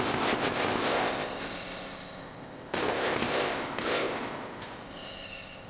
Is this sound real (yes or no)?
no